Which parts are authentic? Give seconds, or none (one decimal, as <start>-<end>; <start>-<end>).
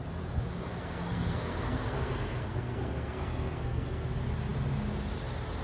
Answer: 0.0-0.7; 4.1-5.6